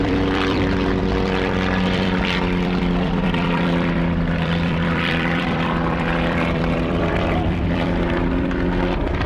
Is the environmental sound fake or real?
fake